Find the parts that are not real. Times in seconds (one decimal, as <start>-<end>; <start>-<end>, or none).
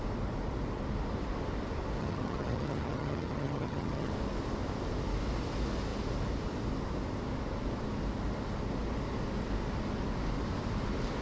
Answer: 2.0-4.1